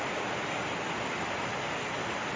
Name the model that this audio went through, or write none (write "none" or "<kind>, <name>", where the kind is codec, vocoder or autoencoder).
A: none